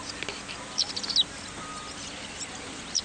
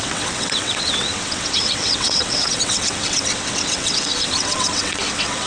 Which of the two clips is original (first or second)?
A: first